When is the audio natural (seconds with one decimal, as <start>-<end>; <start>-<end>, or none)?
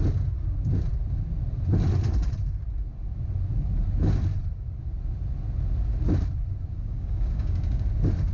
0.0-6.7; 7.8-8.3